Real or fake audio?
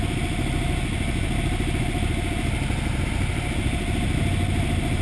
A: real